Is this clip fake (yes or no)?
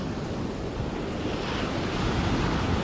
no